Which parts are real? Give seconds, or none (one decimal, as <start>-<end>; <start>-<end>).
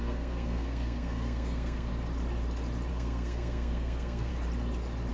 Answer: 1.9-2.9; 4.3-5.1